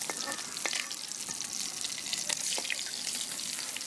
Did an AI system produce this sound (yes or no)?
no